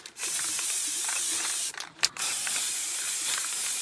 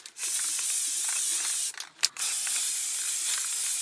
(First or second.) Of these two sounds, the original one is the second